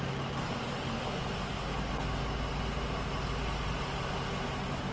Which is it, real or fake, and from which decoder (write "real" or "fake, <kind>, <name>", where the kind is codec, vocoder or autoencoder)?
real